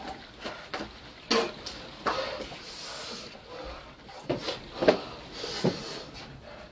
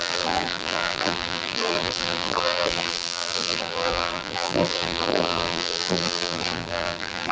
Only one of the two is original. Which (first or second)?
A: first